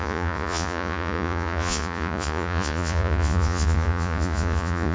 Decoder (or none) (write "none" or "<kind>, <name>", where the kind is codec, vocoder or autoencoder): vocoder, Vocos